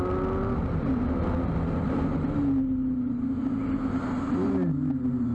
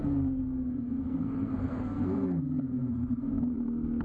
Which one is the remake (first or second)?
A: second